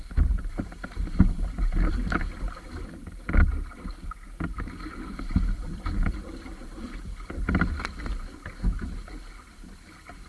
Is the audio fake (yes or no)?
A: no